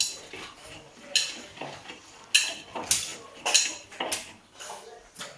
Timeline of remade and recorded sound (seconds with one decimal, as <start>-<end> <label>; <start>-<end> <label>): 0.0-5.4 recorded